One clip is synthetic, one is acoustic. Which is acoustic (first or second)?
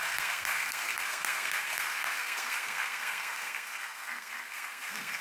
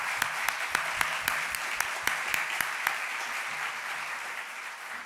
second